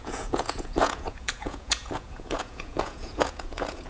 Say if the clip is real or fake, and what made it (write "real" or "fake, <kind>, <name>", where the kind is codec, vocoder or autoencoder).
fake, vocoder, Vocos